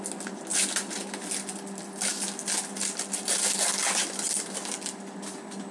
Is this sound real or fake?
real